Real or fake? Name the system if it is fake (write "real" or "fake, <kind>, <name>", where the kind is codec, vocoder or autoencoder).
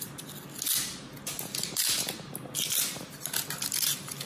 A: real